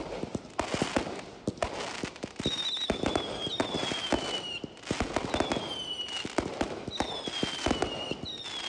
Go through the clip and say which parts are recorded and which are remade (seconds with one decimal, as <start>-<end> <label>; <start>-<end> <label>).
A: 0.0-8.7 recorded